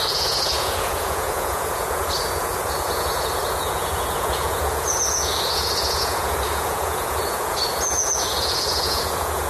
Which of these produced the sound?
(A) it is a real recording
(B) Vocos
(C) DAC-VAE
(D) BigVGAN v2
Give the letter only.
B